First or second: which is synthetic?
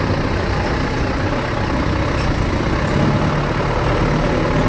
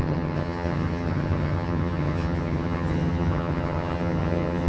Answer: second